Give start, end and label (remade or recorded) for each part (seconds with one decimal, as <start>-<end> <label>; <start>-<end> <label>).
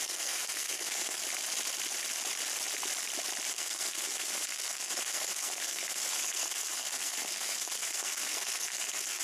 0.0-1.2 remade; 1.2-3.5 recorded; 3.5-9.2 remade